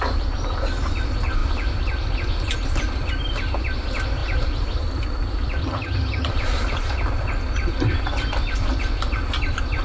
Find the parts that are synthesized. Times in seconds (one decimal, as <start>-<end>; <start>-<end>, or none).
5.6-6.3

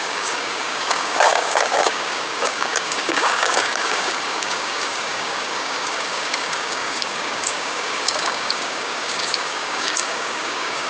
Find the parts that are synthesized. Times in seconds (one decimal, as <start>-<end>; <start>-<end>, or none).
0.0-10.9

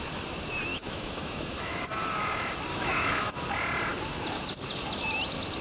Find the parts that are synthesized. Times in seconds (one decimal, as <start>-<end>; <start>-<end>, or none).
0.7-1.8; 2.7-3.3

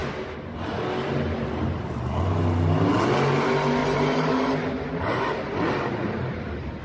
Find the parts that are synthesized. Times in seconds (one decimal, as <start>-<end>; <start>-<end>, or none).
3.8-5.2

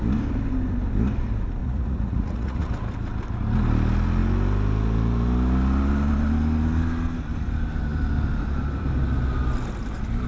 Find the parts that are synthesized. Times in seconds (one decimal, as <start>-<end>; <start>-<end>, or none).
1.6-2.7

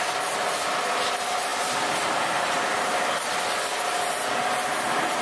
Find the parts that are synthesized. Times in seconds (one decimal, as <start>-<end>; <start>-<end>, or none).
none

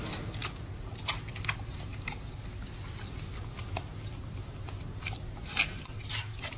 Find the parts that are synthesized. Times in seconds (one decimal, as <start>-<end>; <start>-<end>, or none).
none